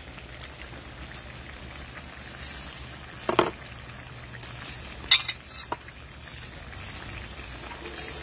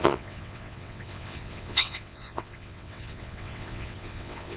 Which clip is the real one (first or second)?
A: first